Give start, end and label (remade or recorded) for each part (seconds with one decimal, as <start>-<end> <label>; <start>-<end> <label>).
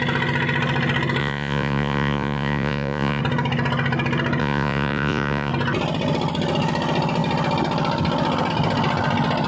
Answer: 0.0-1.2 recorded; 1.2-3.2 remade; 3.2-4.4 recorded; 4.4-5.5 remade; 5.5-9.5 recorded